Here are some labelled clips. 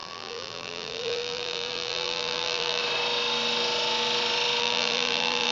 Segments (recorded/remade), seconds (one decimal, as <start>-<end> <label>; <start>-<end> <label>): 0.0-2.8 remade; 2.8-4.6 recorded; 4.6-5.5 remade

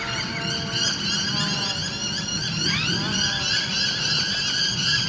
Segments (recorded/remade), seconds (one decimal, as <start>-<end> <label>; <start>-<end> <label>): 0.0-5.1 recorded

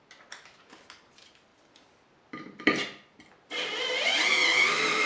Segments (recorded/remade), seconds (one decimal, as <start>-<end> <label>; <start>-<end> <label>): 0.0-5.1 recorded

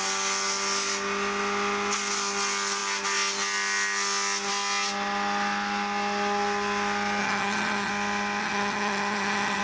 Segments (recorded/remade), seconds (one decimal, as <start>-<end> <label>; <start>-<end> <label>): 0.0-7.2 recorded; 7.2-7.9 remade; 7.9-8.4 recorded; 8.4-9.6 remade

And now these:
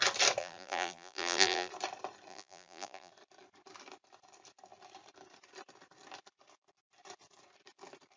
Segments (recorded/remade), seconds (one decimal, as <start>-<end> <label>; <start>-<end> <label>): 0.0-0.4 recorded; 0.4-1.7 remade; 1.7-2.3 recorded; 2.3-3.1 remade; 3.1-8.2 recorded